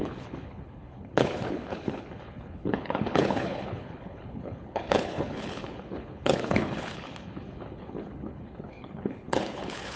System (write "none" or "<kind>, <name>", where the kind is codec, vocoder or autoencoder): codec, HILCodec